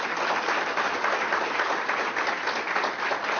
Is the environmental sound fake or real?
real